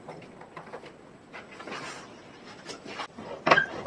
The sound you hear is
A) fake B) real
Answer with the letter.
B